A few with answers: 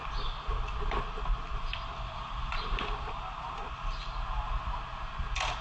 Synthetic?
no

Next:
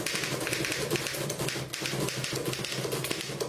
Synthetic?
no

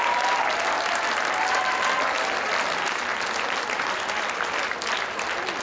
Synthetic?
no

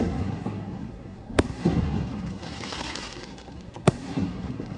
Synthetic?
yes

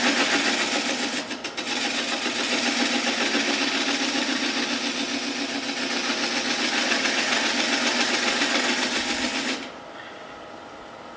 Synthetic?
no